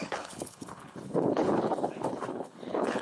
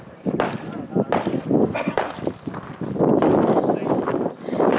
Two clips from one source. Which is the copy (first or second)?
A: first